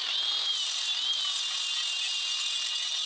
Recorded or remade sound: recorded